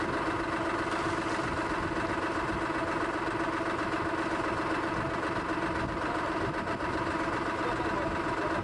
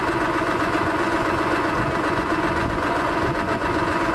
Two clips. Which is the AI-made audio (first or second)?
second